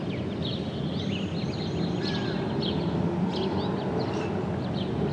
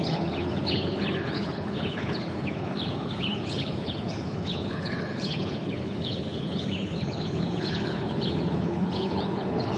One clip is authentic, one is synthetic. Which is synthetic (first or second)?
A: second